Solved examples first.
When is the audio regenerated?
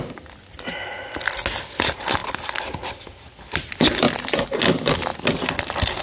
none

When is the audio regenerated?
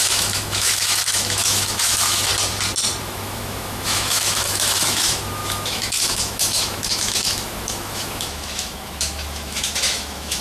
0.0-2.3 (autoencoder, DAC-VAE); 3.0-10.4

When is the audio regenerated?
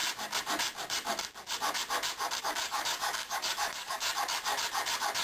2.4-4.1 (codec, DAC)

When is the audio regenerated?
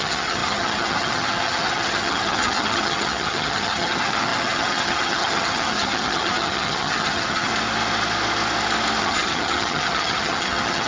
0.0-7.5 (vocoder, HiFi-GAN); 9.0-10.9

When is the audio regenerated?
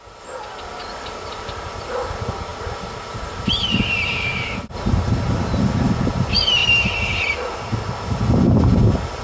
none